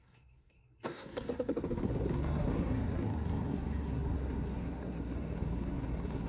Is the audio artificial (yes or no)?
yes